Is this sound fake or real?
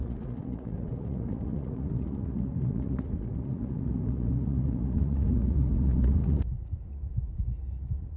fake